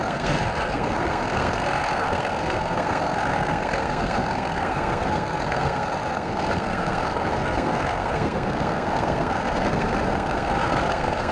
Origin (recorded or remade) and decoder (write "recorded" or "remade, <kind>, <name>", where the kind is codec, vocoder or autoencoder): remade, codec, SNAC